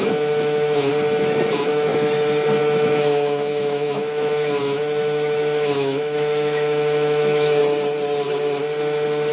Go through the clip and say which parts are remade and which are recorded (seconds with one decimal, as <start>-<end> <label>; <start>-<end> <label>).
0.0-0.9 remade; 0.9-1.5 recorded; 1.5-1.9 remade; 1.9-2.6 recorded; 2.6-7.6 remade; 7.6-9.3 recorded

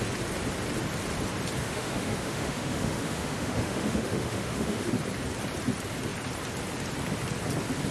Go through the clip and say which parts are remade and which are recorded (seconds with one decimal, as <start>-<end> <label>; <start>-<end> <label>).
0.0-1.6 recorded; 1.6-4.9 remade; 4.9-7.9 recorded